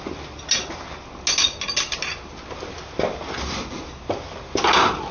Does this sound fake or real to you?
real